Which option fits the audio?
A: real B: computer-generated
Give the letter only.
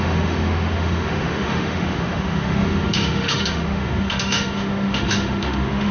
B